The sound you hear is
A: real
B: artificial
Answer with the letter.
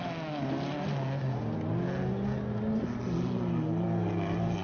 A